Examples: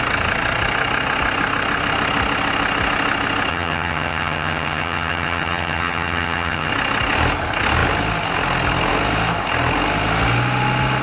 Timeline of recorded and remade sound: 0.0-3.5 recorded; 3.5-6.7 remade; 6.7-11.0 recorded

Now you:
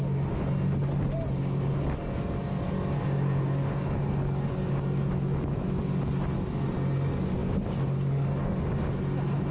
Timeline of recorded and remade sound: 0.0-9.5 recorded

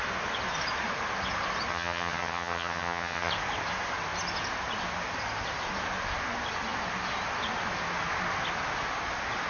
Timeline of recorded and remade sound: 0.0-1.7 recorded; 1.7-3.3 remade; 3.3-9.5 recorded

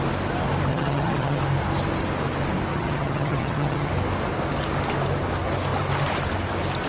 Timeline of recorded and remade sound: 0.0-0.7 recorded; 0.7-1.4 remade; 1.4-2.7 recorded; 2.7-3.9 remade; 3.9-6.9 recorded

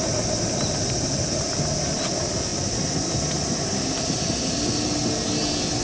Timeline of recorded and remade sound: 0.0-5.8 recorded

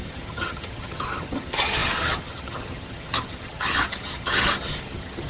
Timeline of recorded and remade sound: 0.0-5.3 remade